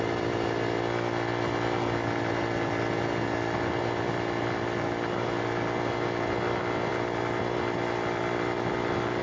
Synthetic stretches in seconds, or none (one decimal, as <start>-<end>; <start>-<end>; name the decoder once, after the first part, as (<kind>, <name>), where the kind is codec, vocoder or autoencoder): none